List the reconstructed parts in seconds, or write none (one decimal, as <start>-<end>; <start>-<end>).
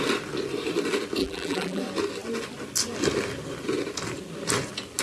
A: 1.2-1.8